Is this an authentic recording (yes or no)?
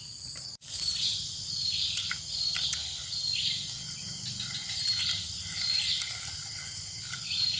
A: yes